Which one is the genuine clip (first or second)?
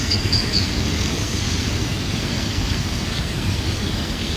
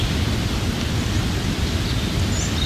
second